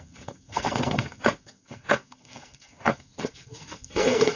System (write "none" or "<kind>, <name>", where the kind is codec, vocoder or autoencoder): codec, SNAC